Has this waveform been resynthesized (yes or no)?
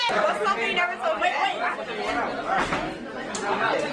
no